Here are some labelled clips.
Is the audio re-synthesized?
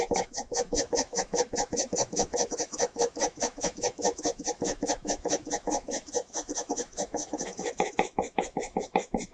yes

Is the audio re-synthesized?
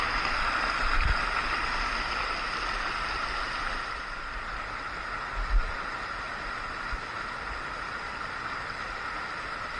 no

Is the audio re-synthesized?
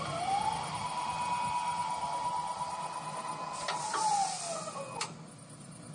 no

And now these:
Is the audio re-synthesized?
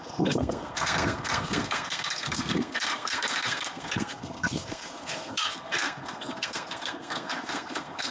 yes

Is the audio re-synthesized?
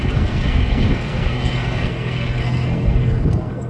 yes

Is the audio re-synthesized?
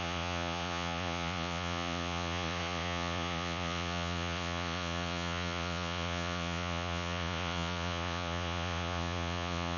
yes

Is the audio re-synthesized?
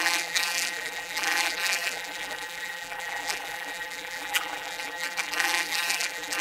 yes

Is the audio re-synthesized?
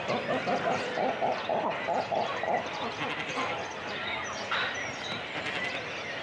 no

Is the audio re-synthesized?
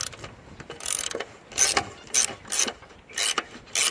no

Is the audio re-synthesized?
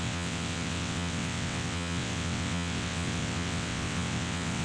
yes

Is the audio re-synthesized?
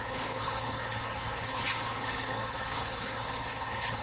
yes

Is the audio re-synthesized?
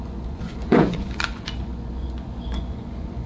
yes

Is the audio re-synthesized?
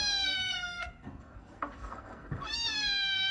yes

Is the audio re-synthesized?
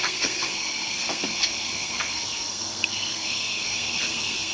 yes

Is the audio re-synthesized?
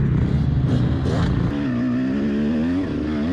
no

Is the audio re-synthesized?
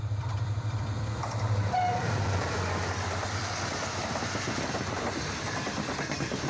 yes